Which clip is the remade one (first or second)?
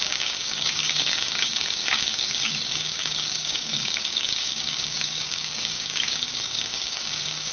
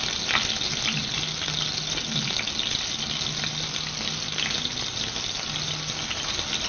first